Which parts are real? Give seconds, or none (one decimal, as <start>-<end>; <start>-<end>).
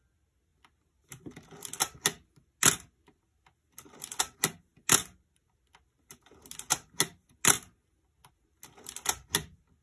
0.0-9.8